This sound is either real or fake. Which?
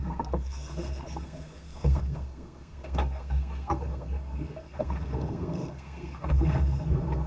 fake